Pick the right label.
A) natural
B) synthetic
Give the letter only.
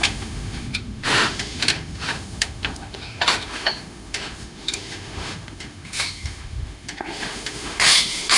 B